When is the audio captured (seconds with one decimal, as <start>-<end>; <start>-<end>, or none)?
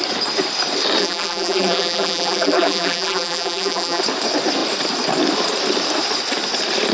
0.0-1.0; 4.0-6.9